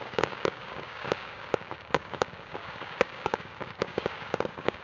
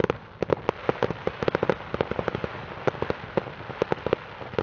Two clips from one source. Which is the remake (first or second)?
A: first